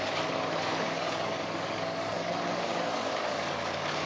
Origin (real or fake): fake